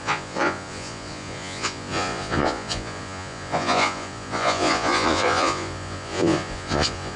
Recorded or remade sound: remade